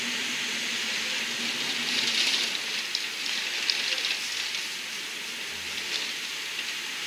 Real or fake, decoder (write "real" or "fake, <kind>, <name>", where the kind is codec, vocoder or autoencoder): real